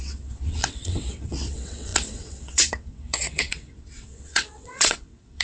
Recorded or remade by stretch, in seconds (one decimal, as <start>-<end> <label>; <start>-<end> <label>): 0.0-5.4 remade